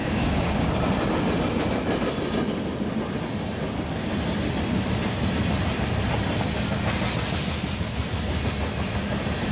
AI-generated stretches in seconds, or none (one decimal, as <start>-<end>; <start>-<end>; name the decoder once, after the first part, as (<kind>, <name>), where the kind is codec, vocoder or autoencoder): 0.0-0.7 (codec, DAC)